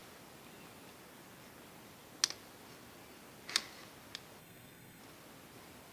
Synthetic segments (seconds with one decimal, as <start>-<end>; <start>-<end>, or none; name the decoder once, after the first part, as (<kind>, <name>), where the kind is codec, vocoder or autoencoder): 4.4-5.0 (codec, SNAC)